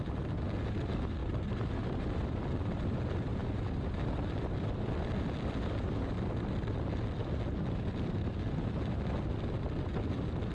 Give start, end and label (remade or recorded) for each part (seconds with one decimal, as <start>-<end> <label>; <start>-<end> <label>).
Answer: 0.0-1.2 recorded; 1.2-2.4 remade; 2.4-10.5 recorded